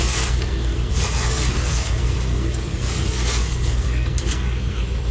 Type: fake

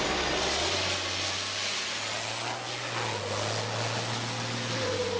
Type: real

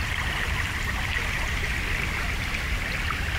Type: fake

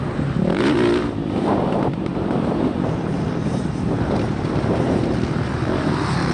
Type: fake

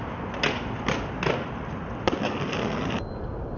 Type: real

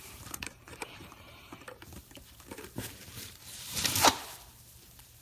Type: fake